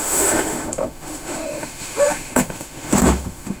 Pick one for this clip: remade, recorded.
remade